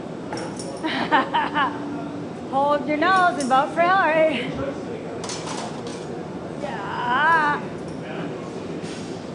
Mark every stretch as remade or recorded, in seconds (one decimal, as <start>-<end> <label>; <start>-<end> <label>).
0.0-5.9 recorded; 5.9-6.7 remade; 6.7-9.3 recorded